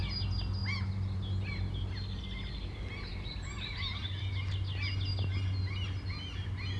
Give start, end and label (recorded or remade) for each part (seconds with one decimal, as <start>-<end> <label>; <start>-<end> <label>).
0.0-6.8 recorded